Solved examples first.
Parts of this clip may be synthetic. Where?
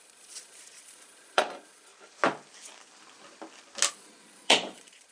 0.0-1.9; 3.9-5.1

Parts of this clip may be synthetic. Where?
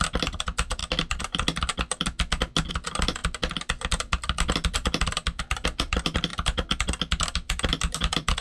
0.0-0.8; 2.7-8.4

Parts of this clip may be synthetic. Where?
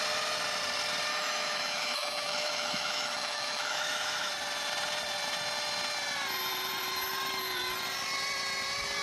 1.1-4.3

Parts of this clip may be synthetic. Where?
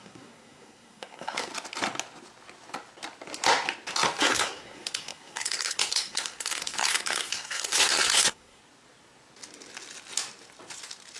0.0-1.5; 4.2-8.6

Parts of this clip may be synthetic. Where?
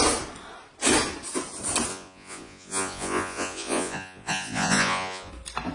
1.9-5.3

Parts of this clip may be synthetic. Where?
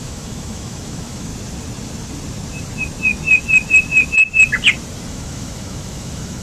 0.0-1.3; 5.1-6.4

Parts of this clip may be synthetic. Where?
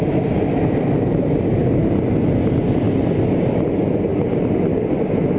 none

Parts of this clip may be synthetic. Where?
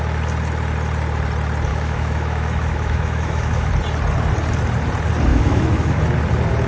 1.7-3.7; 5.3-6.0